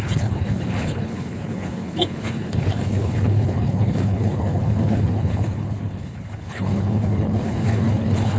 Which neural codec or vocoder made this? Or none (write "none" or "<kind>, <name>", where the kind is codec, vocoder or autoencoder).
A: codec, HILCodec